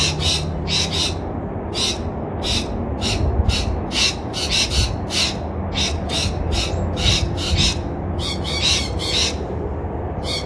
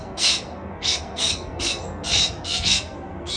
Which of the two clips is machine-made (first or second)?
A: second